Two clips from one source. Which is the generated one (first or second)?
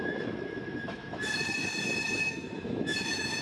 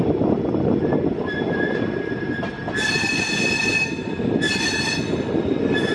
first